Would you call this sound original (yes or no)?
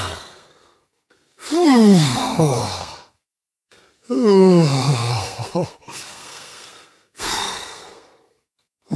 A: no